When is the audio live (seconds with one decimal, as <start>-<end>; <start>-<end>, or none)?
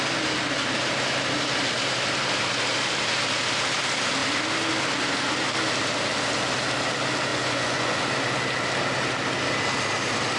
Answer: 0.0-7.3; 8.0-10.4